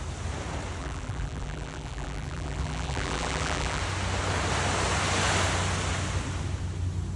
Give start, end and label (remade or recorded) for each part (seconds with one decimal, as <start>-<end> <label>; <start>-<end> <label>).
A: 0.0-0.8 recorded; 0.8-3.8 remade; 3.8-7.2 recorded